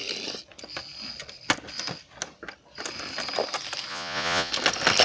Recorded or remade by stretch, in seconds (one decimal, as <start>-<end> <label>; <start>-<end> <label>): 0.0-3.9 recorded; 3.9-4.5 remade; 4.5-5.0 recorded